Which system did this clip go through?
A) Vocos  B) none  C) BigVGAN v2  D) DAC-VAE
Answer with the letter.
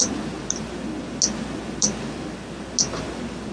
B